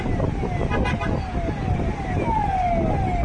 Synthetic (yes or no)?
no